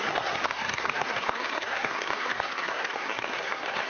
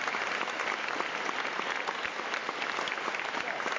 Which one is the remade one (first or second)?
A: first